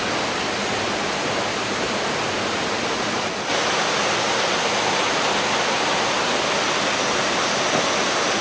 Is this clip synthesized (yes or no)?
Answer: no